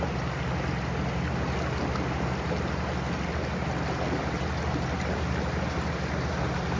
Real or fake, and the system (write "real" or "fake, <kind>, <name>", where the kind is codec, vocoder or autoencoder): real